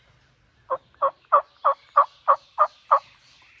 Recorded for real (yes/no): yes